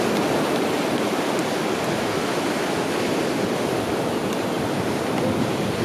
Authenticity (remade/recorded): recorded